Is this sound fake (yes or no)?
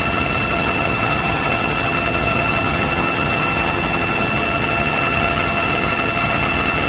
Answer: yes